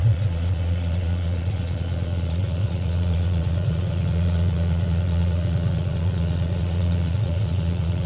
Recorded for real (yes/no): no